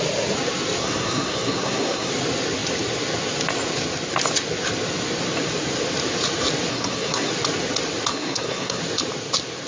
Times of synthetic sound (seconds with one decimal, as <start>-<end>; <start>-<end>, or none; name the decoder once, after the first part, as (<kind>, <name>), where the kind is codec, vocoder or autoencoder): 0.8-2.1 (codec, SNAC); 6.7-7.3; 8.1-8.8